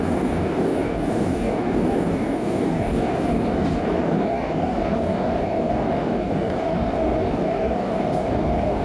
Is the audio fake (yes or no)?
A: yes